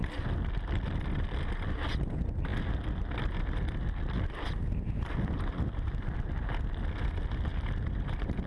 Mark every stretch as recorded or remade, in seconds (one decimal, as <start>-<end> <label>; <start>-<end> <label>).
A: 0.0-8.5 recorded